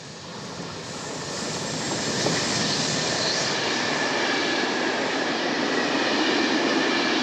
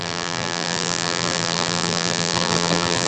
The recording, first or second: first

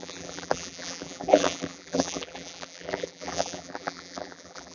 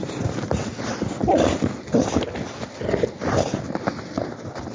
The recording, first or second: second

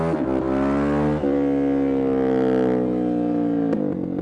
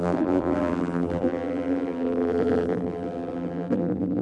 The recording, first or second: first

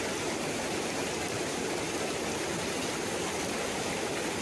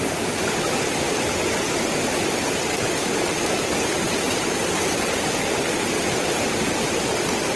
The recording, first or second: first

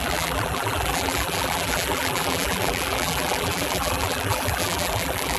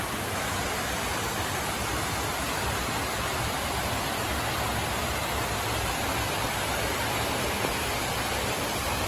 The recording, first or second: second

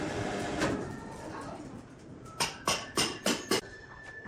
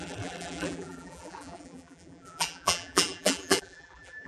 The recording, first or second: first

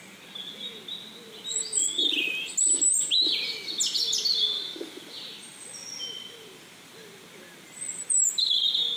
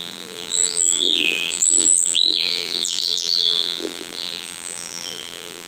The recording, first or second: first